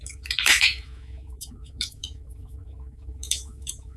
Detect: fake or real fake